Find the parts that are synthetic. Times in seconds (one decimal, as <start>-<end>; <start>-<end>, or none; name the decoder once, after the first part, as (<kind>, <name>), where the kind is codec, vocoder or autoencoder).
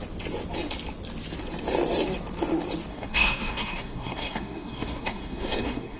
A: 2.9-6.0 (codec, SNAC)